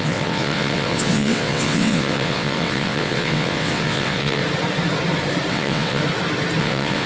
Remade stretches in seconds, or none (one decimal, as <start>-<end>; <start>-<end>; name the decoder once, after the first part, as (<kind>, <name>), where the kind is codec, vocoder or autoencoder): 0.0-4.4 (vocoder, WaveNeXt); 5.5-6.0; 6.6-7.1